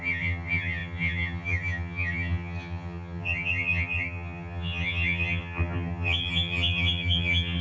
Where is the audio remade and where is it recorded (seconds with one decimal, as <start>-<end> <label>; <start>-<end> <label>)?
0.0-7.6 remade